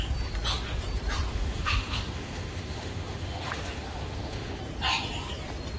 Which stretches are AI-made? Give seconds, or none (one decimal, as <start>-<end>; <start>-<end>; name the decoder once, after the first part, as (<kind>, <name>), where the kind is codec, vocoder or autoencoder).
1.3-4.6 (autoencoder, DAC-VAE)